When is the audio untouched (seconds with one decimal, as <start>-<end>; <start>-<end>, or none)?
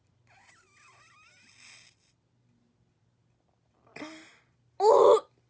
0.0-5.5